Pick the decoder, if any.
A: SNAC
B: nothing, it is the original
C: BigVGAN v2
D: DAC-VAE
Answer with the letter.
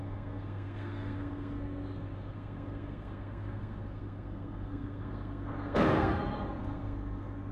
A